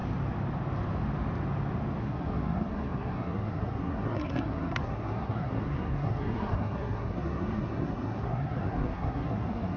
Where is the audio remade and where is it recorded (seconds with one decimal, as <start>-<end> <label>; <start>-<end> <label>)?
0.0-2.0 recorded; 2.0-9.8 remade